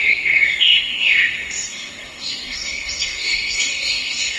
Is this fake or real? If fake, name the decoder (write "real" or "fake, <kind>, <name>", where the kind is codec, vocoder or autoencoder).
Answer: fake, codec, SNAC